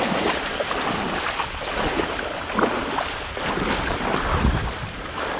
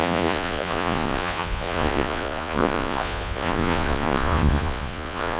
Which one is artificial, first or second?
second